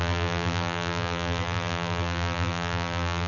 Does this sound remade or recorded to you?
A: remade